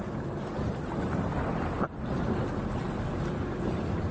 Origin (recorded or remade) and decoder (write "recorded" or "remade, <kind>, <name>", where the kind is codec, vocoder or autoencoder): recorded